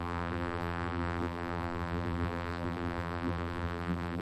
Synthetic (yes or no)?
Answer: yes